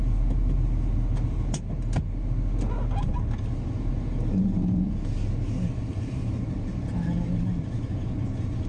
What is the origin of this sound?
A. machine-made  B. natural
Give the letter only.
B